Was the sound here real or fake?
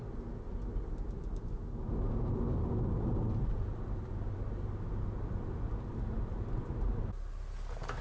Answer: real